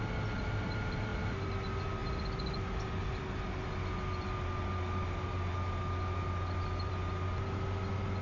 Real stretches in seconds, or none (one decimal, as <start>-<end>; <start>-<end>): 0.0-8.2